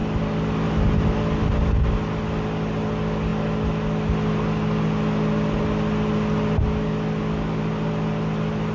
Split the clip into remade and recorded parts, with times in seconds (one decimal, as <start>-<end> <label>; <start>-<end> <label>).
0.0-8.7 recorded